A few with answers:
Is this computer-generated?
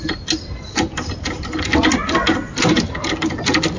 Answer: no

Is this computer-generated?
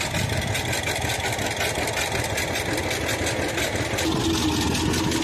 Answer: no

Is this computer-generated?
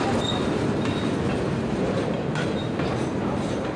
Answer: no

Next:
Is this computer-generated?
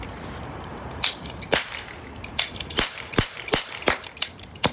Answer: yes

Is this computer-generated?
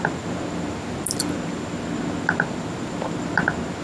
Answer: no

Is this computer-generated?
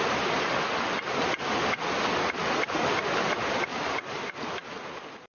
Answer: no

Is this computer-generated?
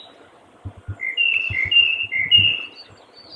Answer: no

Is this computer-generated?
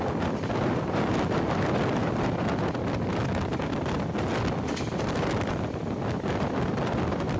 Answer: no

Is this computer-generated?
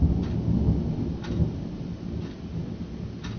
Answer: no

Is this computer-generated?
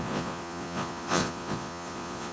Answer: yes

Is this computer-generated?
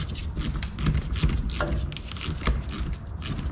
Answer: no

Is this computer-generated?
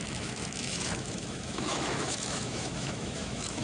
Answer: yes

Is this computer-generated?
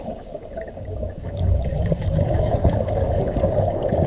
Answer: yes